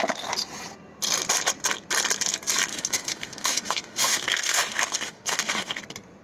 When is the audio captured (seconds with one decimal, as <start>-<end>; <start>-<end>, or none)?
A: 0.0-2.7; 5.8-6.2